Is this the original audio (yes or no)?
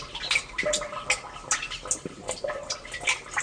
yes